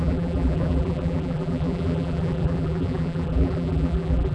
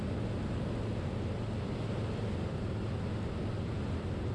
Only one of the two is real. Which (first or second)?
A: second